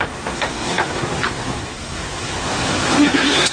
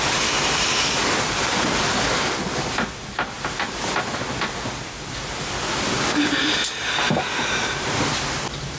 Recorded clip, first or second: second